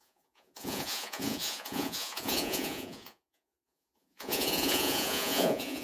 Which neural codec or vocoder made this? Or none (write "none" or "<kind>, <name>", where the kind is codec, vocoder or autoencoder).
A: vocoder, Vocos